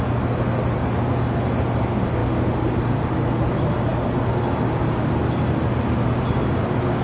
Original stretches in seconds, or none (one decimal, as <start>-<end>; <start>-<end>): 0.0-7.0